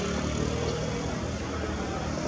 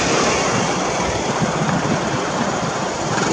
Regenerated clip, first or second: second